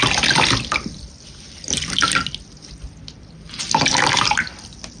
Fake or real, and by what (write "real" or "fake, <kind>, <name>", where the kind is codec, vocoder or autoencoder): real